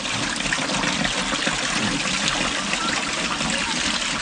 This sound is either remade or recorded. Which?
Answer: recorded